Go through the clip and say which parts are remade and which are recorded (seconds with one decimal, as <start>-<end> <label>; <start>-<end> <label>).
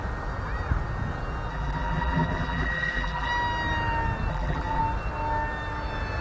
0.0-1.5 recorded; 1.5-3.3 remade; 3.3-4.3 recorded; 4.3-4.8 remade; 4.8-6.2 recorded